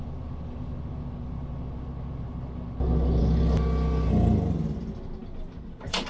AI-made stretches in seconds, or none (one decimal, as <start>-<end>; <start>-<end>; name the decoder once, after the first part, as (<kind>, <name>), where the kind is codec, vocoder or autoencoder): none

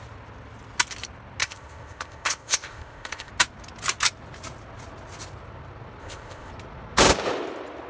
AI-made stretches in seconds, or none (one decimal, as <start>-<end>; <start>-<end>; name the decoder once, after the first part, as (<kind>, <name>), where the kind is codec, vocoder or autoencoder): 1.4-3.3 (codec, ZipCodec); 6.0-6.5

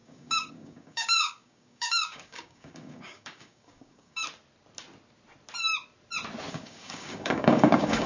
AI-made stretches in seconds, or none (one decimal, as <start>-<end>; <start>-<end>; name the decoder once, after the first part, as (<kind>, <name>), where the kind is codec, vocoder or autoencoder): 0.0-4.2 (codec, DAC); 6.5-8.1

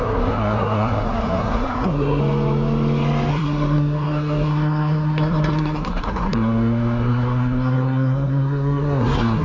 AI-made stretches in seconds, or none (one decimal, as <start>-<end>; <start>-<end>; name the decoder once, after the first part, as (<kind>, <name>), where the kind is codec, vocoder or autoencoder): 0.0-2.2 (codec, SNAC); 3.3-9.4

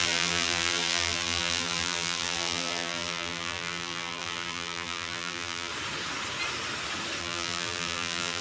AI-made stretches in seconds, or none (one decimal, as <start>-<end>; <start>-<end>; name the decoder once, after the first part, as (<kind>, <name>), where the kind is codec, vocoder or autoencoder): 0.0-5.7 (vocoder, BigVGAN v2); 7.2-8.4